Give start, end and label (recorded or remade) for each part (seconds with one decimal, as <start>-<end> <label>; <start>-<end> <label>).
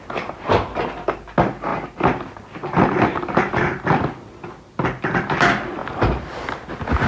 0.0-7.1 recorded